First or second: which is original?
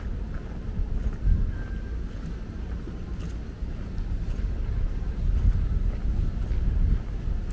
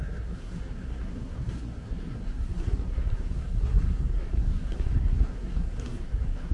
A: first